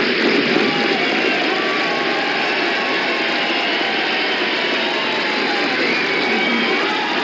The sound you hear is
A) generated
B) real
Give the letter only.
B